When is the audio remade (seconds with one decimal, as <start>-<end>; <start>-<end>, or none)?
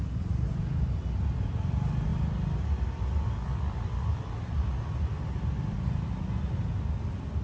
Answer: none